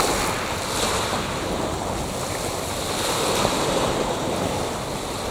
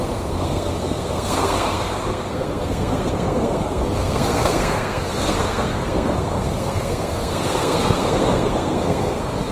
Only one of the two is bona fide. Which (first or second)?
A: first